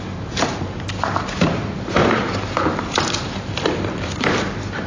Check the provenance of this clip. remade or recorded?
remade